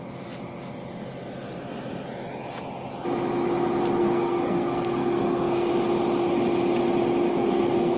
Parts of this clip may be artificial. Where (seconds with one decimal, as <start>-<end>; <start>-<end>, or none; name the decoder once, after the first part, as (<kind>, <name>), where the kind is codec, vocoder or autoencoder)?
4.0-5.7 (codec, SNAC); 7.3-8.0